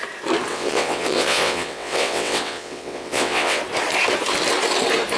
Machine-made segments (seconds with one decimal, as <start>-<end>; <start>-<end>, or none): 0.5-3.6